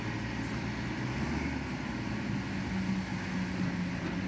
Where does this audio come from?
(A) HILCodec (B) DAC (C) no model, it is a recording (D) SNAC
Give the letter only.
C